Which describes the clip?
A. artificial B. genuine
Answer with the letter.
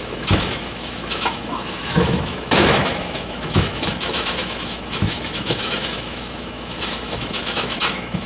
A